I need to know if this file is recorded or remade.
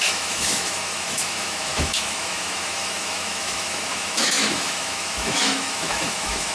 remade